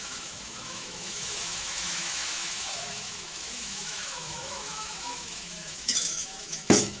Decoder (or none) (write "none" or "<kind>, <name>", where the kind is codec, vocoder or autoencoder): autoencoder, DAC-VAE